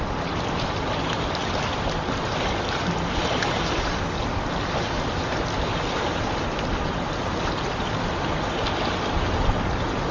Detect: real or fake real